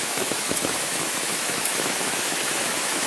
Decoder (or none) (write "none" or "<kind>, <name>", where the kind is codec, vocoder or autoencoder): autoencoder, DAC-VAE